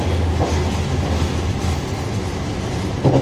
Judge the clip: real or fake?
real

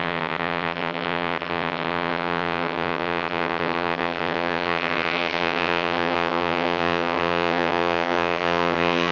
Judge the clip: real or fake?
fake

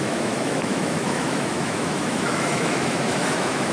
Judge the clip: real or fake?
fake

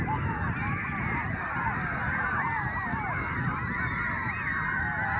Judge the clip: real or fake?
real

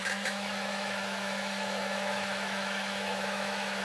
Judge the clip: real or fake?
fake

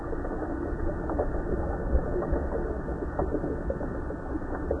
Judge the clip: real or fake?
real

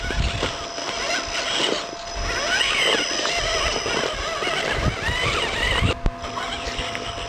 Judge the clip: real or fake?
real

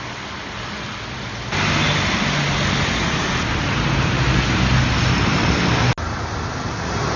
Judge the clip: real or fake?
real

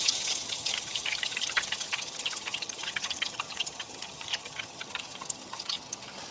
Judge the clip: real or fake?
fake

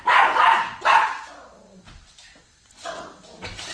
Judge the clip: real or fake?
real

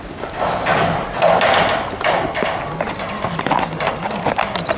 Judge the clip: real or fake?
real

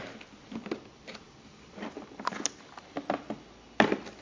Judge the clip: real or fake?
real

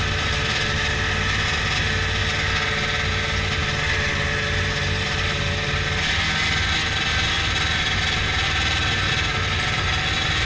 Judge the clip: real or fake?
real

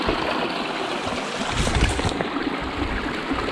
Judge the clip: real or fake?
real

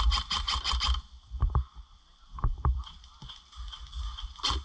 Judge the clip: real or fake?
real